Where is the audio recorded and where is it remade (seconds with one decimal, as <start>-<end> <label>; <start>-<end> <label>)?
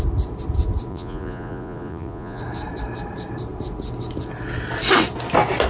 0.0-0.9 recorded; 0.9-2.4 remade; 2.4-5.7 recorded